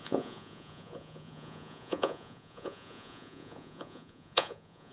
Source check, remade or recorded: remade